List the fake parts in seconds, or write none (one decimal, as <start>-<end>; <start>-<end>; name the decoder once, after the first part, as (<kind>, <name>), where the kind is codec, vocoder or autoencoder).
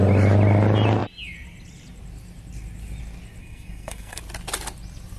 3.4-4.2 (codec, SNAC)